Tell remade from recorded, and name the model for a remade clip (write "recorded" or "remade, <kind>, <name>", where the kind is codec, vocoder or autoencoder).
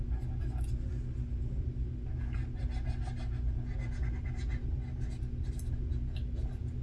recorded